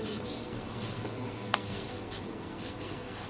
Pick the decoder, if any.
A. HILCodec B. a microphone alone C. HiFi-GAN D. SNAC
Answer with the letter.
D